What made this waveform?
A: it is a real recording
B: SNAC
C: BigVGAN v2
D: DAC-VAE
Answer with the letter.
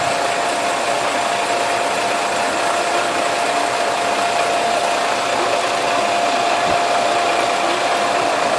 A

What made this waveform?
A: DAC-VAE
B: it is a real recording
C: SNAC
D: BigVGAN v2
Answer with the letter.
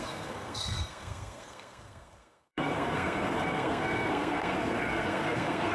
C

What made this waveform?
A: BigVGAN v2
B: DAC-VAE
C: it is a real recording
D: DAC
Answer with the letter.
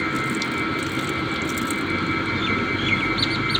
C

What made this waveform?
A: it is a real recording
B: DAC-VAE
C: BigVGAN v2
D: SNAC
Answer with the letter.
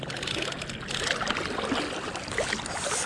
A